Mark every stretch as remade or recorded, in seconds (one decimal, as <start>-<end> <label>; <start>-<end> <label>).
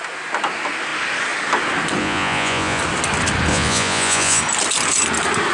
0.0-2.0 recorded; 2.0-2.8 remade; 2.8-3.5 recorded; 3.5-4.4 remade; 4.4-5.5 recorded